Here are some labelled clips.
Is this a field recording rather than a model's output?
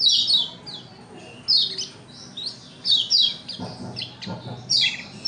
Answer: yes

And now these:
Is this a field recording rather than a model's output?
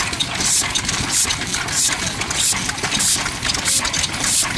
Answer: yes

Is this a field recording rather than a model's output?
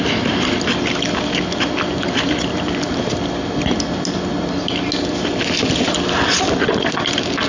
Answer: yes